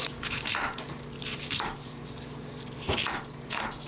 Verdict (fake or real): fake